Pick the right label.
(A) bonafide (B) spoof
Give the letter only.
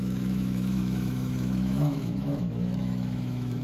B